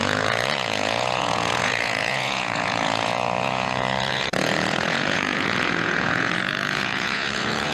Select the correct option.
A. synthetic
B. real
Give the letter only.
A